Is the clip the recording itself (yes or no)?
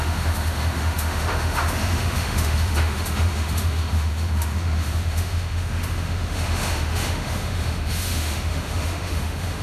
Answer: no